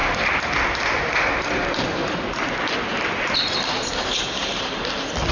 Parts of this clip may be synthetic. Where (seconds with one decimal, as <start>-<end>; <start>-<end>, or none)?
3.2-5.3